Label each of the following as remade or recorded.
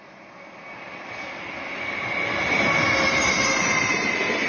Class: recorded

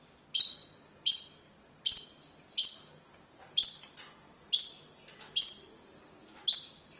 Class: recorded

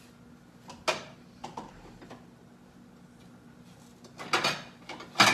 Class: recorded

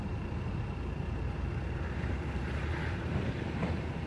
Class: remade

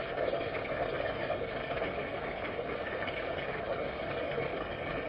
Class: remade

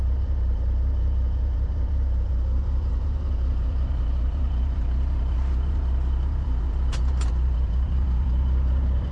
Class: remade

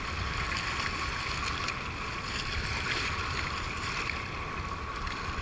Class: recorded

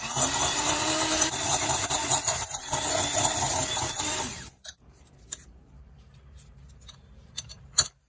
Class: remade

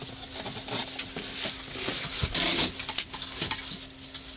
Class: recorded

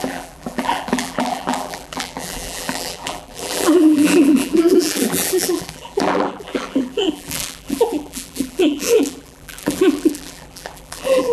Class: remade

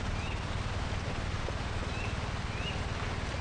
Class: recorded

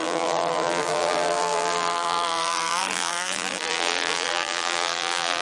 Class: remade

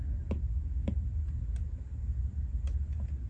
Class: recorded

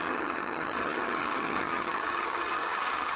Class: remade